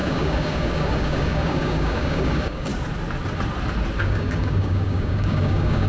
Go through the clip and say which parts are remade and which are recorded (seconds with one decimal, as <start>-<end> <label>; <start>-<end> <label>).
0.0-2.7 remade; 2.7-4.0 recorded; 4.0-5.9 remade